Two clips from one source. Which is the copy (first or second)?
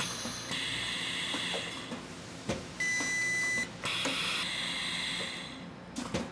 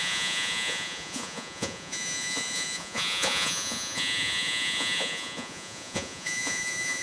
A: second